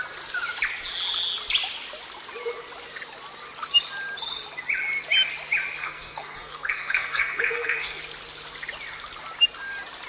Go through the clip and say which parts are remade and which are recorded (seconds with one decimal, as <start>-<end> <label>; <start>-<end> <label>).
0.0-5.8 recorded; 5.8-8.0 remade; 8.0-10.1 recorded